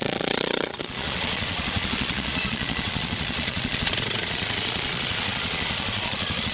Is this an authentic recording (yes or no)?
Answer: no